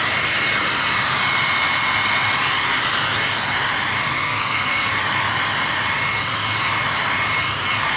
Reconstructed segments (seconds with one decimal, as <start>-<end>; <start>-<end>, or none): 4.1-4.9